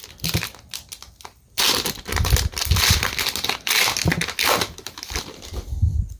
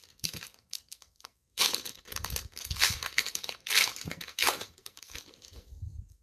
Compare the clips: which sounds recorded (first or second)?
first